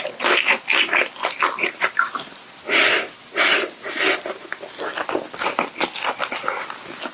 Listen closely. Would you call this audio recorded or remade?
recorded